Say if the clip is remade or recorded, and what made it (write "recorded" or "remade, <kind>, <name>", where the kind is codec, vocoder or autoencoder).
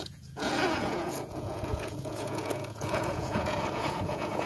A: remade, vocoder, Vocos